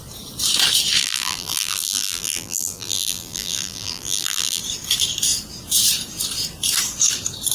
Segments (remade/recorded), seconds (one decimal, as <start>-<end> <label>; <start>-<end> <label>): 0.0-1.0 recorded; 1.0-4.6 remade; 4.6-7.5 recorded